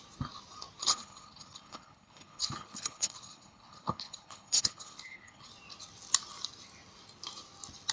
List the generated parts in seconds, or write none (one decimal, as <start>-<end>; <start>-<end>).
0.8-5.5